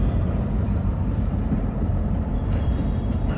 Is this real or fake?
fake